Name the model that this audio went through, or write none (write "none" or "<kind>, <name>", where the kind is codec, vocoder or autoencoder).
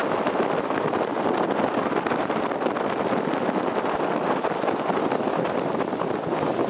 none